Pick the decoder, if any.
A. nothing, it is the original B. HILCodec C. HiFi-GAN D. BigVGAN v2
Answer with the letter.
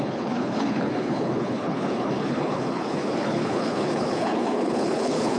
B